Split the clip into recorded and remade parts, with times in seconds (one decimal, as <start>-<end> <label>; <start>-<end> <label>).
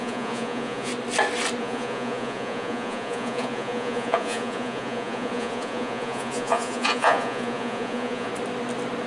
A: 0.0-0.9 remade; 0.9-1.6 recorded; 1.6-8.3 remade; 8.3-9.1 recorded